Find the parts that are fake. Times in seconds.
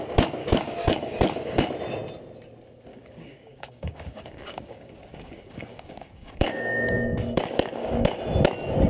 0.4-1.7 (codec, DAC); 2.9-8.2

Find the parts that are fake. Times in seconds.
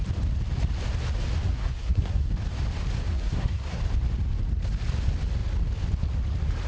1.5-2.3 (codec, SNAC); 3.1-3.8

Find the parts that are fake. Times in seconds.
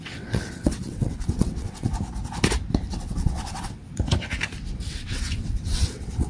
0.0-1.9 (vocoder, WaveNeXt); 3.0-3.8; 4.9-6.3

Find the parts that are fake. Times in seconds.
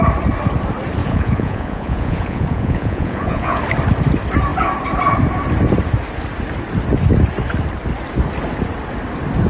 1.0-3.6 (vocoder, Vocos)